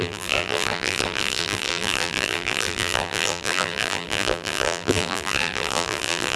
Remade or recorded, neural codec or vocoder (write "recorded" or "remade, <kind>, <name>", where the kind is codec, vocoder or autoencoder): remade, vocoder, BigVGAN v2